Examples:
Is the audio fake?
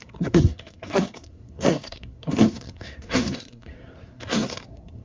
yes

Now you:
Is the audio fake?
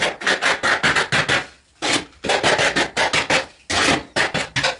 no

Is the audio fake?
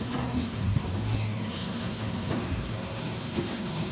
yes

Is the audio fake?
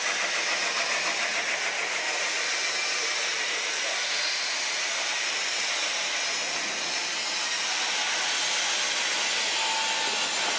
no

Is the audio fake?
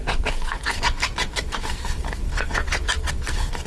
yes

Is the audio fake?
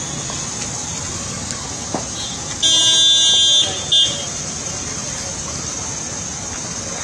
no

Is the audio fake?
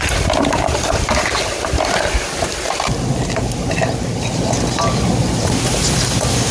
no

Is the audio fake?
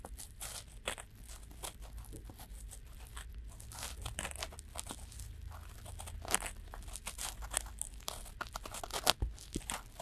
no